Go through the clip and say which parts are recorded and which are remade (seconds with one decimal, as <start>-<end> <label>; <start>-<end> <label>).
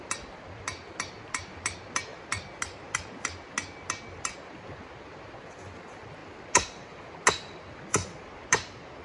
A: 0.0-9.0 recorded